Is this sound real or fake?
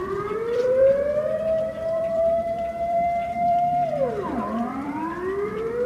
fake